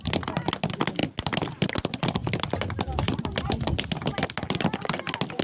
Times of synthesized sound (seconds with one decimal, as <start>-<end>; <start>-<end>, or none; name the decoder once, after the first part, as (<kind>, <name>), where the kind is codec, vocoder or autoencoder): none